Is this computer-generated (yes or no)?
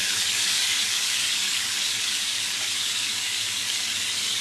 yes